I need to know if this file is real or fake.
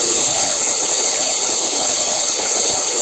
fake